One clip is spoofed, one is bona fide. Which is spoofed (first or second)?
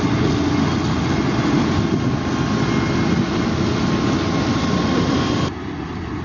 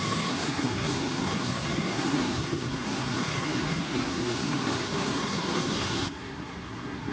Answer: second